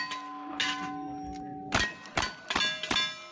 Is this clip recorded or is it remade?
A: recorded